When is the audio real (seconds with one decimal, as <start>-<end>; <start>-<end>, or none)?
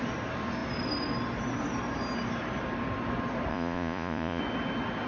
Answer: 0.0-3.5; 4.4-5.1